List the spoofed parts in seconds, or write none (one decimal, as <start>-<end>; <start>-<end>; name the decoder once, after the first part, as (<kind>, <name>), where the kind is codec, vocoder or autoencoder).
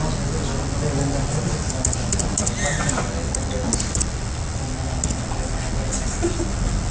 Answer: none